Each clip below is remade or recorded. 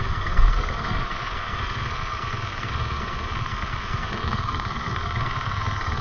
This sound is remade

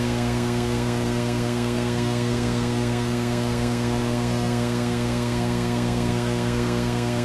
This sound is remade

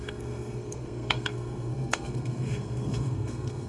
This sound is remade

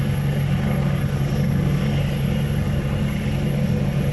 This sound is recorded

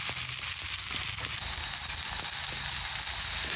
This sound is recorded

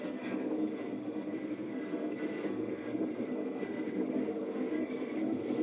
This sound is remade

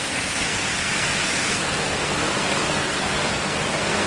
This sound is remade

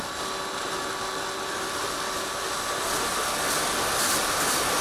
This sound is recorded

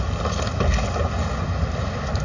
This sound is recorded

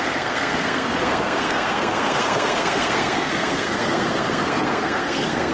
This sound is remade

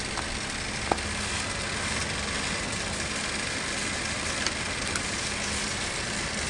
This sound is recorded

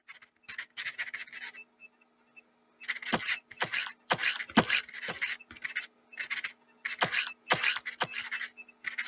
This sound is recorded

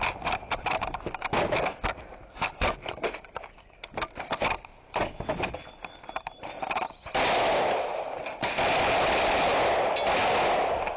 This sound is recorded